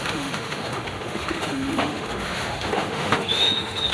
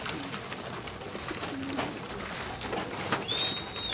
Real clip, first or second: second